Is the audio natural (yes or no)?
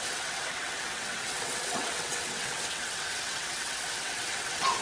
no